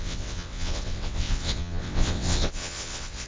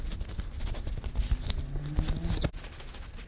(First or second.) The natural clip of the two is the second